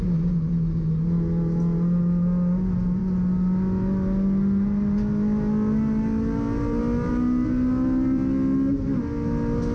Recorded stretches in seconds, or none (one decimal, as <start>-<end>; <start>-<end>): 0.0-9.7